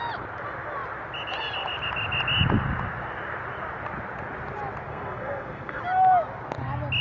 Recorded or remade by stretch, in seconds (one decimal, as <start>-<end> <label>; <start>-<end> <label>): 0.0-4.9 recorded; 4.9-5.8 remade; 5.8-7.0 recorded